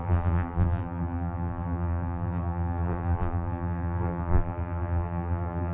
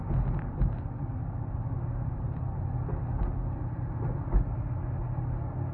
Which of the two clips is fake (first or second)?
first